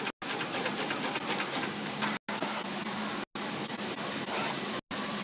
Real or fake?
real